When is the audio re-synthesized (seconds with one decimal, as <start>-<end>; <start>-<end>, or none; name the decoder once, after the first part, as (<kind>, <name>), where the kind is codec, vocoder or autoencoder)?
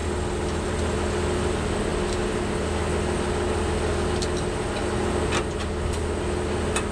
none